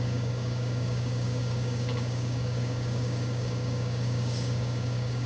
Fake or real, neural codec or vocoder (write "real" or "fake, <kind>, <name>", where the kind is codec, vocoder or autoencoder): fake, codec, DAC